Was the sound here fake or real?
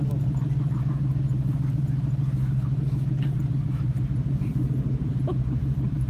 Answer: fake